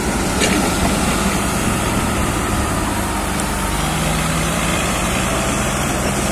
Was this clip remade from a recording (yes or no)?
no